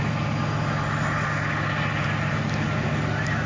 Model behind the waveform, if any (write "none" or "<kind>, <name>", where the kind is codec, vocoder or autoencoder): none